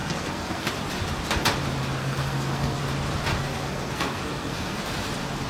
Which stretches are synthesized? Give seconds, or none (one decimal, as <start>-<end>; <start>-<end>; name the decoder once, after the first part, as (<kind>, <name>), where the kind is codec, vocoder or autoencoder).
0.0-0.7 (codec, SNAC); 2.0-2.8; 3.3-4.8